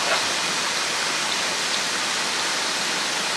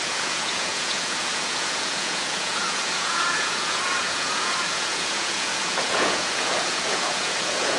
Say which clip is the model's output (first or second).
second